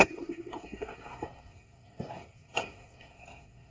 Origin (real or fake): fake